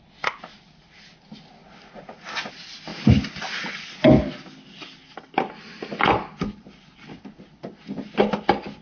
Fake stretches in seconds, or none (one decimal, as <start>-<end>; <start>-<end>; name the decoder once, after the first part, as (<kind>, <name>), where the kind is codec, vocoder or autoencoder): none